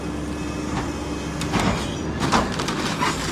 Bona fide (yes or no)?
yes